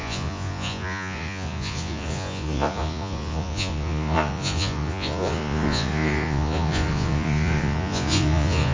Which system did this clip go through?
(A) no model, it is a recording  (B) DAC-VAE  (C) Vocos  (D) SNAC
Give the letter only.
C